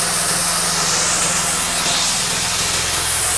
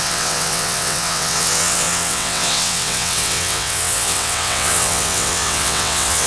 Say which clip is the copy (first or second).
second